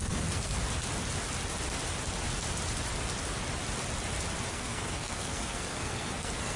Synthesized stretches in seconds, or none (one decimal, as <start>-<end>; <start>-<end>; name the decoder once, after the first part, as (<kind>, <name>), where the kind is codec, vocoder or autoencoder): 0.0-0.5 (codec, SNAC); 4.5-6.6